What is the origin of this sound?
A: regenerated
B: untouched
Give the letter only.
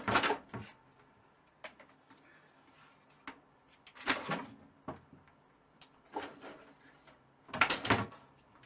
B